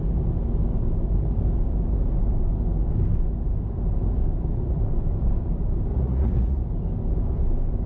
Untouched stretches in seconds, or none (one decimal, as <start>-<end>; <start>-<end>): 0.0-5.9; 6.6-7.9

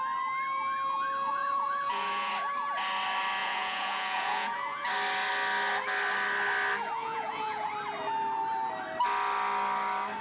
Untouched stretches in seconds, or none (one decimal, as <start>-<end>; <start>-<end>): 0.0-1.3; 2.3-3.4; 4.9-7.0; 7.7-10.2

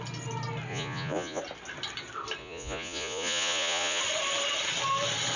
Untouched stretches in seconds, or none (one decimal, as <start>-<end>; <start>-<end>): 0.0-0.7; 1.4-2.4; 4.0-5.4

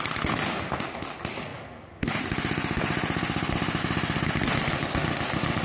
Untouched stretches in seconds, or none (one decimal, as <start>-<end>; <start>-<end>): 0.0-5.6

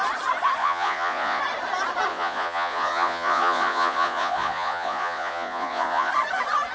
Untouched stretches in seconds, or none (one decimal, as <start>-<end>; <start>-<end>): 0.0-0.6; 1.4-2.1; 6.1-6.7

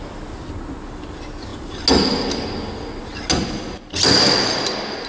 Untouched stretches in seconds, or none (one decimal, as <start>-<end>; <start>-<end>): 0.0-5.1

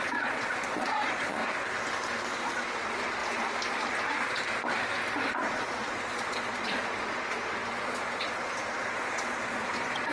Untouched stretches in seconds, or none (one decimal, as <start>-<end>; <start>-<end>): 1.4-2.4; 3.2-5.3

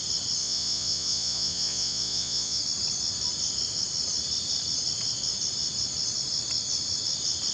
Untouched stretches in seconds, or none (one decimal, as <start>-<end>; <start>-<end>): 0.0-0.4; 2.6-7.5